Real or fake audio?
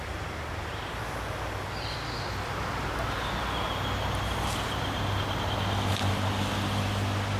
real